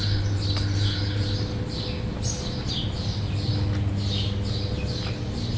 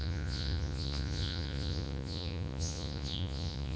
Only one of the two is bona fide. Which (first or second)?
first